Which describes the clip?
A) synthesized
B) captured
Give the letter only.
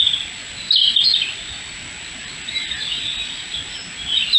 B